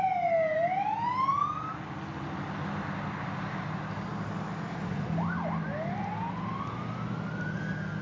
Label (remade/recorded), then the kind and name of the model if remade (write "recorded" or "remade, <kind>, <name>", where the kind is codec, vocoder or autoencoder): recorded